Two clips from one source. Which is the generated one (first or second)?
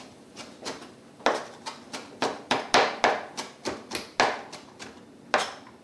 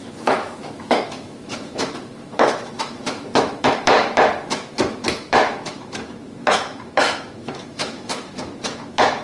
second